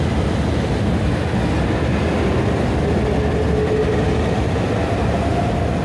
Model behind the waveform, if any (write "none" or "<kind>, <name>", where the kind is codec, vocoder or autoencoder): none